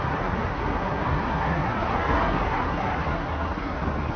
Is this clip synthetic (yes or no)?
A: yes